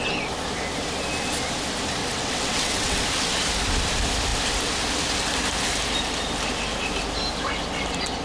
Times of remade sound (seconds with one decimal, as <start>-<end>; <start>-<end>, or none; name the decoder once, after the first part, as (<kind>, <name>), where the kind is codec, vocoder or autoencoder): 2.0-3.0 (vocoder, WaveNeXt)